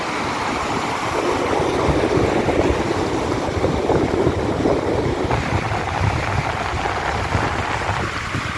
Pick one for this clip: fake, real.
real